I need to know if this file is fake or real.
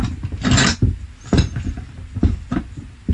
real